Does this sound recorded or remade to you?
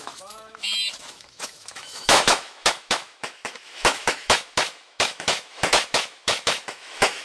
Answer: remade